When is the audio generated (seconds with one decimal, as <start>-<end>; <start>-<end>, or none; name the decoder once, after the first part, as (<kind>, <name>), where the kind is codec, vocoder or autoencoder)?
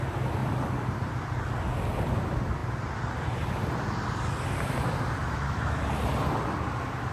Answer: 5.2-5.8 (autoencoder, DAC-VAE)